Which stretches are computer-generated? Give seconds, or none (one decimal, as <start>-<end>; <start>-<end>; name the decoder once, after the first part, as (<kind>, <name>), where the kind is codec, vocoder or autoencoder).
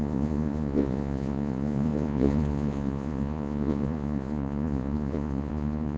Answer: 0.0-6.0 (vocoder, Vocos)